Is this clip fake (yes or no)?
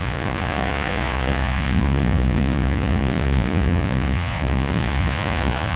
yes